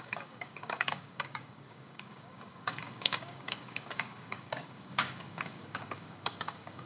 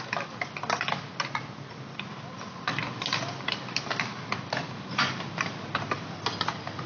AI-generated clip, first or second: first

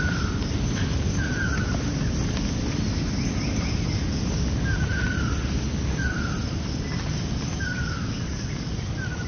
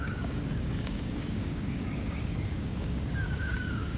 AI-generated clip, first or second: second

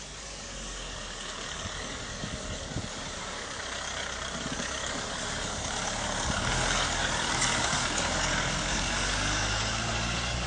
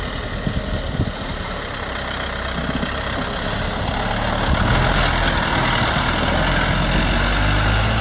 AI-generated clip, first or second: first